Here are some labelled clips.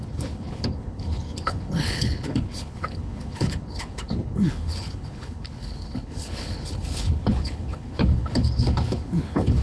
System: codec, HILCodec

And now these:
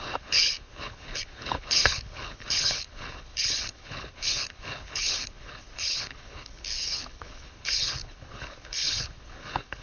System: codec, HILCodec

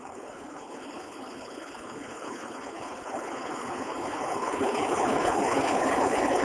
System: codec, HILCodec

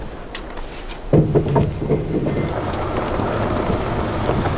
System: none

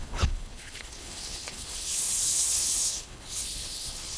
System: codec, HILCodec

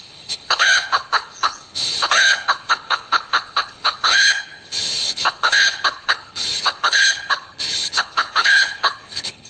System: codec, HILCodec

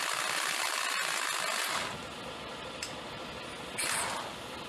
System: none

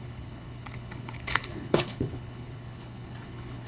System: codec, HILCodec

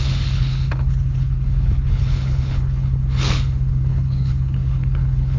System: codec, HILCodec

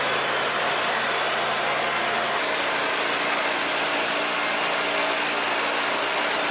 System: none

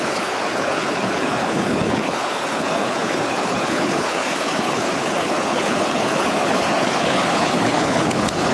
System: codec, HILCodec